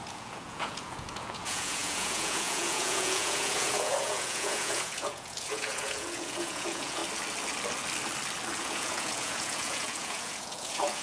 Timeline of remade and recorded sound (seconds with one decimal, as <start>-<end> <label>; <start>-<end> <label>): 0.0-7.0 remade; 7.0-8.6 recorded; 8.6-11.0 remade